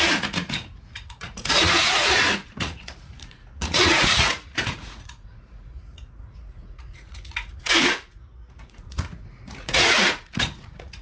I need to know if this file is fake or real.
fake